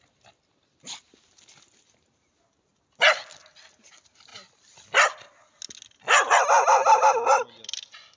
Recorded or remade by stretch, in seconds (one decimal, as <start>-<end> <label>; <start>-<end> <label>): 0.0-8.2 recorded